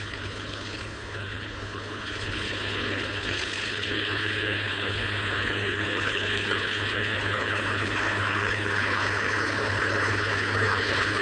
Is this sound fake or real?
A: fake